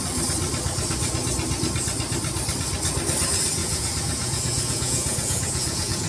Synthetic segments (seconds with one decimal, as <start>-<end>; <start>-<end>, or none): 3.6-6.1